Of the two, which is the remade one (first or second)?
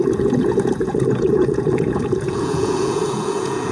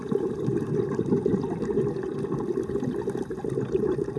first